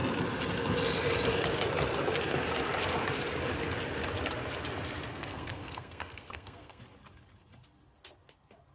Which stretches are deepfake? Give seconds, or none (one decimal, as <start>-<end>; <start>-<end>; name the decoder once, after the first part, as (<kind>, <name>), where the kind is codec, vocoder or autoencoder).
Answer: 5.1-6.8 (codec, SNAC)